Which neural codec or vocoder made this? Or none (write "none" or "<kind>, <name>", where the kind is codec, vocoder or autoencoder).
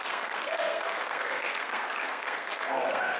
codec, SNAC